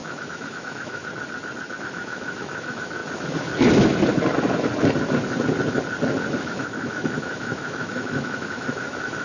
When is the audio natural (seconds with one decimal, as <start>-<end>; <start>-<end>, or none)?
1.0-1.8; 3.0-6.4